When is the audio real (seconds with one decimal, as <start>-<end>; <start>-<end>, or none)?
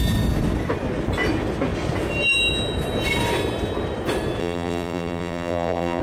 0.0-4.4